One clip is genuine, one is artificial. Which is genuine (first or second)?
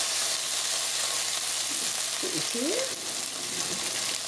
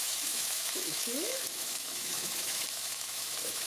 first